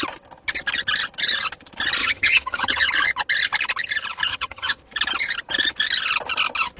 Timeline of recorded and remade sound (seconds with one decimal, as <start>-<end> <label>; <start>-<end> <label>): 0.0-2.0 recorded; 2.0-2.9 remade; 2.9-4.3 recorded; 4.3-4.8 remade; 4.8-6.8 recorded